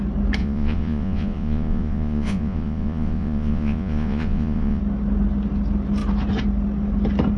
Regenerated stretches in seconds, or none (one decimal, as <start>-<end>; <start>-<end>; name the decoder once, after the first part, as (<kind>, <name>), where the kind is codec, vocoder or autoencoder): 0.4-4.8 (vocoder, Vocos)

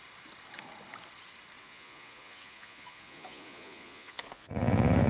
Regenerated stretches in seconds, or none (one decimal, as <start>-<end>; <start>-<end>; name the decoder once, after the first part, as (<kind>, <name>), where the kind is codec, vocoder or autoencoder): 1.6-5.1 (vocoder, Vocos)

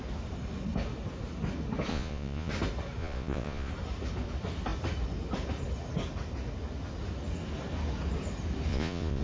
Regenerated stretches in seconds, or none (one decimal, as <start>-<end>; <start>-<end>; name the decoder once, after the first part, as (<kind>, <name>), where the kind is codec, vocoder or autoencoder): 1.9-2.5 (vocoder, Vocos); 3.0-3.7; 8.7-9.2